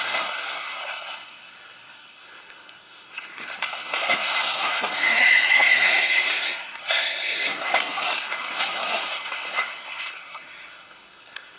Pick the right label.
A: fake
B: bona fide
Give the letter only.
A